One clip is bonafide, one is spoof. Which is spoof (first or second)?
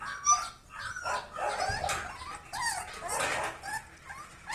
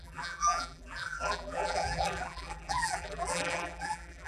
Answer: second